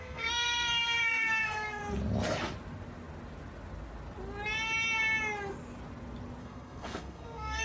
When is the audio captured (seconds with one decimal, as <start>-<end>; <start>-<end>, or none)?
1.8-6.4